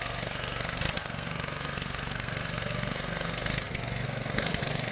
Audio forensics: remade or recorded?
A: remade